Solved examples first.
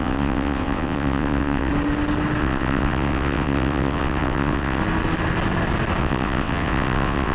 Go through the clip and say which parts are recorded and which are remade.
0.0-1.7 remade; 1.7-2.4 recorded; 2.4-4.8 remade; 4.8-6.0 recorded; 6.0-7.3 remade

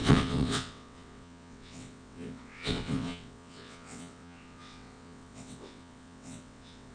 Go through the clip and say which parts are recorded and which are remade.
0.0-6.9 remade